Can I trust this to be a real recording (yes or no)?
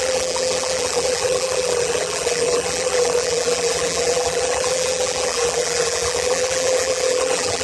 no